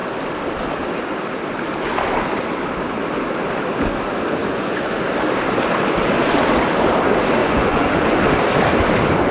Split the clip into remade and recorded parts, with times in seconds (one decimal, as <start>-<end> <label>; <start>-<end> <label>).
0.0-4.4 recorded; 4.4-4.9 remade; 4.9-7.4 recorded; 7.4-8.2 remade; 8.2-9.3 recorded